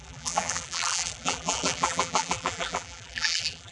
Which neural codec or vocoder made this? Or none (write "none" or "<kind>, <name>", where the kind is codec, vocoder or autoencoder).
vocoder, BigVGAN v2